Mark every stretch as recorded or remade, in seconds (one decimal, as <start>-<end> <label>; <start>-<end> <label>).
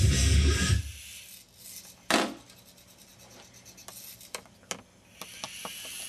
0.0-6.1 recorded